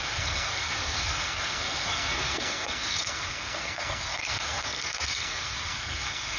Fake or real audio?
fake